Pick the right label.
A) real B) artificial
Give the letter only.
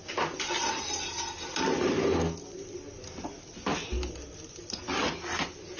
A